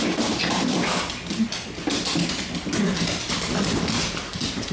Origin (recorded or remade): recorded